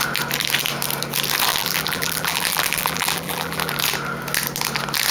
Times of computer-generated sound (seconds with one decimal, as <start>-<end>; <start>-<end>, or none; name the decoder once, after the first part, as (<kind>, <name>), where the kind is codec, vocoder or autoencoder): 1.5-3.7 (vocoder, BigVGAN v2)

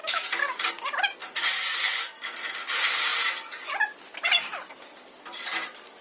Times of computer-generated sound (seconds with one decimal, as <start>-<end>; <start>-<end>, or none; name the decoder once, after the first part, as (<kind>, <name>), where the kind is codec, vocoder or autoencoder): 0.0-1.2 (vocoder, BigVGAN v2); 2.5-3.1; 4.4-6.0

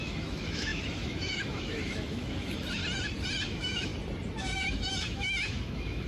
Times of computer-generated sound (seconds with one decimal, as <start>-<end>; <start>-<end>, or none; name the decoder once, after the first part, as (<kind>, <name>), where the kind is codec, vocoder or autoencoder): 0.0-2.8 (autoencoder, DAC-VAE); 3.4-3.9; 4.4-6.1